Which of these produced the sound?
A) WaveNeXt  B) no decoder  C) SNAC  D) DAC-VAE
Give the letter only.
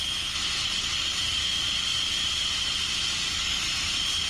B